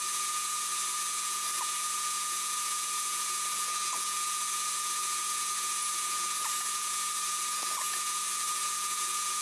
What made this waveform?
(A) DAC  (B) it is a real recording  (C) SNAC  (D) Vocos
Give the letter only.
D